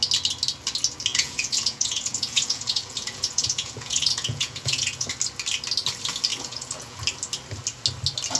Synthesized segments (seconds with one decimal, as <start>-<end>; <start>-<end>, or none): 1.1-5.1; 6.3-7.0